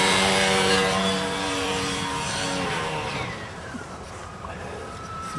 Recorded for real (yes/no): no